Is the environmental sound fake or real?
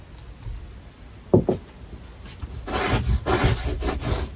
real